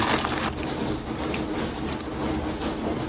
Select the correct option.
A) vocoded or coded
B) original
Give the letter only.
B